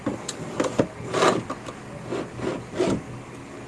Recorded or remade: recorded